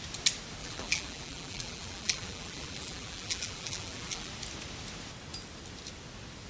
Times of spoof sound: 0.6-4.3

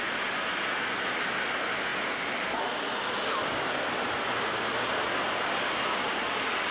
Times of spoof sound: none

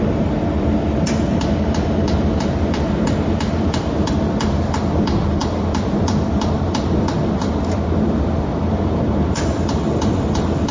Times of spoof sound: 0.0-1.3; 2.3-10.7

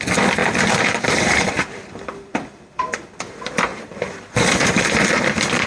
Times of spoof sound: 0.4-1.5; 3.7-4.8